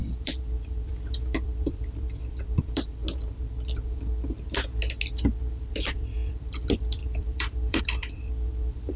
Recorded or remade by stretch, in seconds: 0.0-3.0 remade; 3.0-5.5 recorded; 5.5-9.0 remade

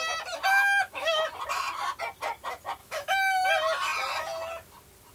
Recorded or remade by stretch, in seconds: 0.0-0.5 recorded; 0.5-1.2 remade; 1.2-2.8 recorded; 2.8-3.5 remade; 3.5-5.1 recorded

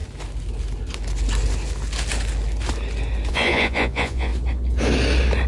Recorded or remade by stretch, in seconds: 0.0-3.3 recorded; 3.3-4.3 remade; 4.3-5.5 recorded